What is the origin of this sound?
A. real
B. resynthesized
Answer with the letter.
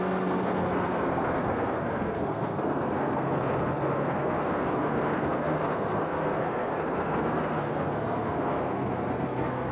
B